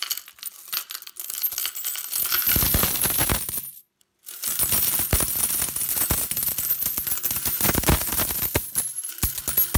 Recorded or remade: recorded